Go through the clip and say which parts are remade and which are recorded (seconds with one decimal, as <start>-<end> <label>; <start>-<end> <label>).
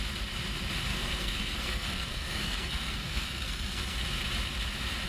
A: 0.0-0.9 recorded; 0.9-4.0 remade; 4.0-5.1 recorded